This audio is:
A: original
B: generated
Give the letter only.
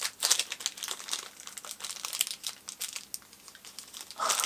A